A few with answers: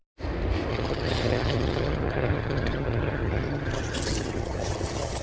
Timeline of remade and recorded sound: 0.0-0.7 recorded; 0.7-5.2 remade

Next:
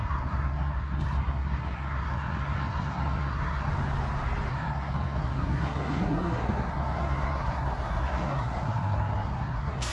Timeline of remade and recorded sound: 0.0-3.7 remade; 3.7-4.5 recorded; 4.5-9.9 remade